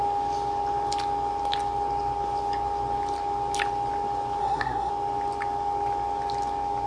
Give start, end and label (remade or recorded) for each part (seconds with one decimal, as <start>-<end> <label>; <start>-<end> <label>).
0.0-4.4 recorded; 4.4-4.9 remade; 4.9-6.9 recorded

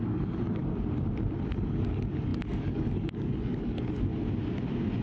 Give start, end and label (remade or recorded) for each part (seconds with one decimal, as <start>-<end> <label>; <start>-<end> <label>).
0.0-0.6 remade; 0.6-1.5 recorded; 1.5-4.1 remade; 4.1-5.0 recorded

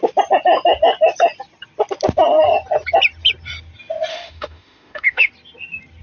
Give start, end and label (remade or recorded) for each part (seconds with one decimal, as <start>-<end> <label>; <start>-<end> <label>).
0.0-4.1 recorded; 4.1-5.3 remade; 5.3-6.0 recorded

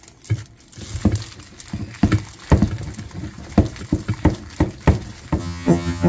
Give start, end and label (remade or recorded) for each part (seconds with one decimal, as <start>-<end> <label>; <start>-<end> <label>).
0.0-5.4 recorded; 5.4-6.1 remade

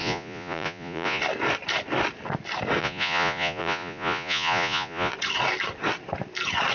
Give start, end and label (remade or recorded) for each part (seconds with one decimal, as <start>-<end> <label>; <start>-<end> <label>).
0.0-1.2 remade; 1.2-2.8 recorded; 2.8-5.1 remade; 5.1-6.7 recorded